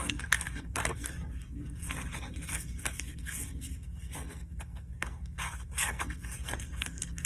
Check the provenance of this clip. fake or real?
fake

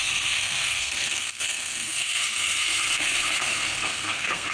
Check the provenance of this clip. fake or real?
fake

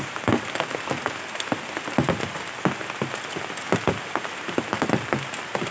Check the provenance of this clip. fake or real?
real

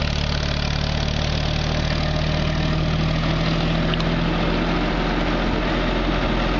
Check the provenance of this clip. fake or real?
real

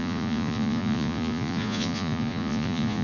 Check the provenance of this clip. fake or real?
fake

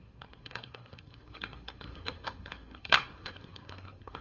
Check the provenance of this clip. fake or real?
fake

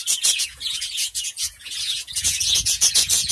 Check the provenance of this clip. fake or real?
fake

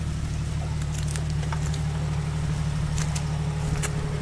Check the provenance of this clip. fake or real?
real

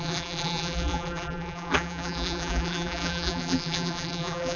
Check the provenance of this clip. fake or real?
fake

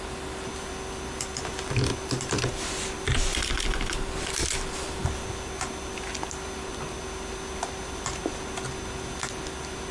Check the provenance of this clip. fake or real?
real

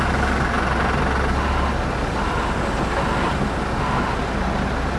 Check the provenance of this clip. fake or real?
real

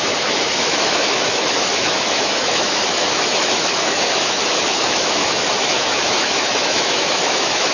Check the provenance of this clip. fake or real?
fake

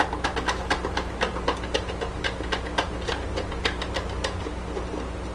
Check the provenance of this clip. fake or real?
real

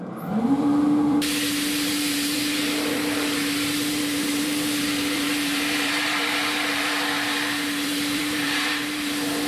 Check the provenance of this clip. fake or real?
fake